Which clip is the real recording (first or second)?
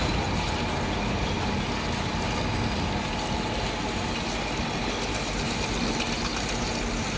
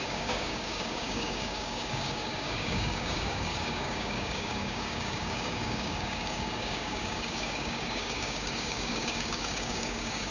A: first